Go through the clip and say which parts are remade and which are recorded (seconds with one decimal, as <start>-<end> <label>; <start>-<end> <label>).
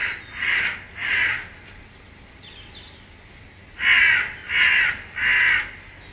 0.0-6.1 recorded